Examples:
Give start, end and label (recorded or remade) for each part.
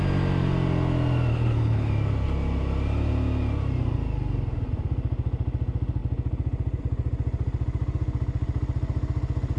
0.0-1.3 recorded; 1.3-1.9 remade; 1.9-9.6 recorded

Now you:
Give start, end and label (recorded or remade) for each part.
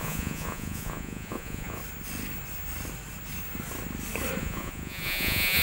0.0-1.8 remade; 1.8-4.4 recorded; 4.4-5.6 remade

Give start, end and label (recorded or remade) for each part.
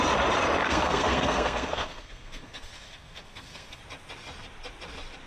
0.0-0.6 recorded; 0.6-3.8 remade; 3.8-5.3 recorded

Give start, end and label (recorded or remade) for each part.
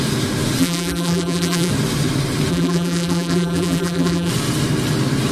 0.0-0.6 recorded; 0.6-1.7 remade; 1.7-2.5 recorded; 2.5-4.3 remade; 4.3-5.3 recorded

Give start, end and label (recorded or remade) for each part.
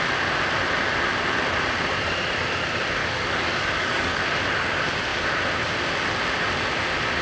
0.0-3.0 recorded; 3.0-4.3 remade; 4.3-7.2 recorded